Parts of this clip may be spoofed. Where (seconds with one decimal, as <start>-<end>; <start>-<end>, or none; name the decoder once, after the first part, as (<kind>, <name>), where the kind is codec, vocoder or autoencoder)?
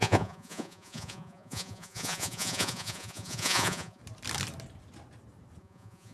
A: 0.0-4.0 (vocoder, Vocos); 5.6-6.1